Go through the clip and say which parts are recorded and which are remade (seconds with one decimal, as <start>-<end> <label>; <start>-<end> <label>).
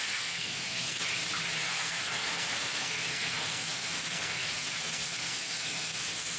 0.0-1.0 remade; 1.0-1.6 recorded; 1.6-6.4 remade